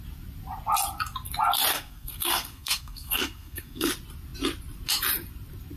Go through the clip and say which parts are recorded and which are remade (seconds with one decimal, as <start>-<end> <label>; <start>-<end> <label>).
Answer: 0.0-1.7 recorded; 1.7-3.9 remade; 3.9-5.8 recorded